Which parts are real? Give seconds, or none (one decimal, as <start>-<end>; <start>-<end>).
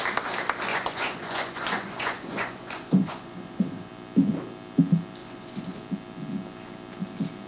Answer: 0.0-0.7; 3.9-5.2; 5.8-7.5